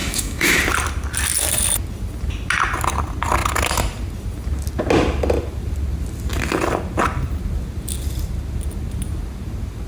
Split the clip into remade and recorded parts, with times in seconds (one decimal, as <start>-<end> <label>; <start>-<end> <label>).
0.0-0.6 remade; 0.6-9.9 recorded